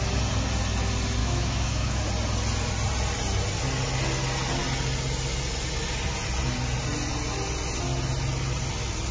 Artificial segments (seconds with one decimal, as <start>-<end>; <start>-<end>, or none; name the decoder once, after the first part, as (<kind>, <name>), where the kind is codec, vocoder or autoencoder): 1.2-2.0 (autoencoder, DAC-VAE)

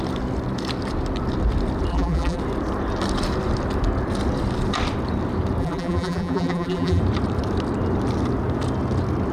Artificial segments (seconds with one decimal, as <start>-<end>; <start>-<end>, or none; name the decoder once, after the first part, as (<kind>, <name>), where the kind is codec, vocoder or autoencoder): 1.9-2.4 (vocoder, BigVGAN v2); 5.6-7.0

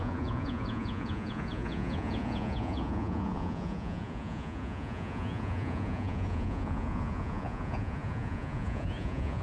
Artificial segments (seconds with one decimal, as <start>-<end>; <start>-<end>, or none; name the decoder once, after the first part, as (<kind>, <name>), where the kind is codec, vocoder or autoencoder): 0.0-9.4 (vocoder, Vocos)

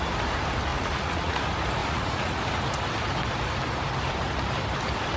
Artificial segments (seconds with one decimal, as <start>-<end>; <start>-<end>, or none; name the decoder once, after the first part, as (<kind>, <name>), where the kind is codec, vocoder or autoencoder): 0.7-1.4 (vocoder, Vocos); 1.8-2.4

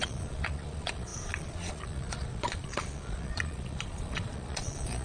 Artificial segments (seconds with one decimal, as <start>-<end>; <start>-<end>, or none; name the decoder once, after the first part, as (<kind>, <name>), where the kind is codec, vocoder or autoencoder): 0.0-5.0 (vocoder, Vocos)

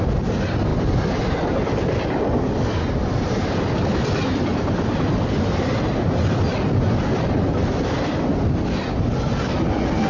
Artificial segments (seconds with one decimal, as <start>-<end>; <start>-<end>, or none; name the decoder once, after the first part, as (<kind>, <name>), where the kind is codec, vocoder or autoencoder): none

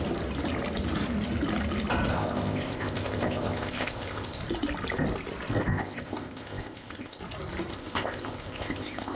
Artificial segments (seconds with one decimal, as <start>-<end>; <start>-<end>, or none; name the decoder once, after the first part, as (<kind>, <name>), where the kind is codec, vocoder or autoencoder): 2.1-4.4 (codec, ZipCodec); 5.6-7.2; 7.7-9.2

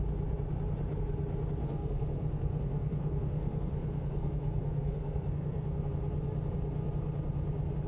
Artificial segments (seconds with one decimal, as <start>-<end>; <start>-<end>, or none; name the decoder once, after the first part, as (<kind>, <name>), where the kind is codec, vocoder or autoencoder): 1.6-5.9 (codec, SNAC)